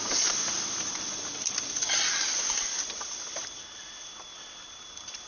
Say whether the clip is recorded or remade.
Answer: remade